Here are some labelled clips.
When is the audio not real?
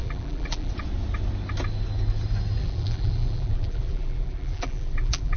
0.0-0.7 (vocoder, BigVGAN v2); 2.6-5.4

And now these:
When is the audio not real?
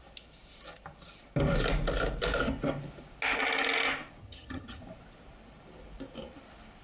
4.2-4.8 (vocoder, HiFi-GAN)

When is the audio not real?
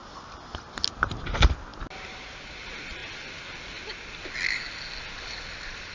none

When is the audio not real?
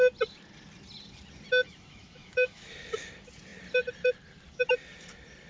1.7-2.7 (autoencoder, DAC-VAE)